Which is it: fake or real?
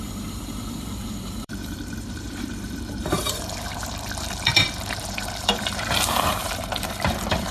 fake